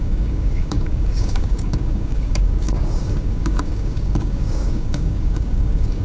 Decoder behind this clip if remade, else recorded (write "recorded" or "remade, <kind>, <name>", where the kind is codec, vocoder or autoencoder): remade, codec, DAC